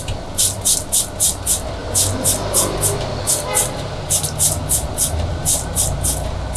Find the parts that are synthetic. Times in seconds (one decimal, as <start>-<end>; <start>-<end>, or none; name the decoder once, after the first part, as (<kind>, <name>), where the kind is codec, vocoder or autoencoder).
none